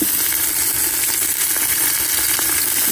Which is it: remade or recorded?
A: recorded